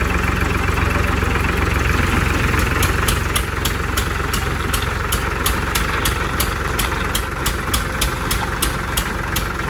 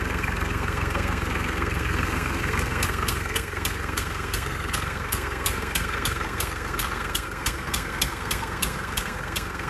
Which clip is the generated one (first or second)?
second